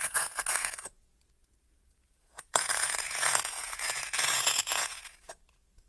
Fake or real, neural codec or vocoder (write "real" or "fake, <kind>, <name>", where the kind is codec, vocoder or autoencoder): fake, vocoder, Vocos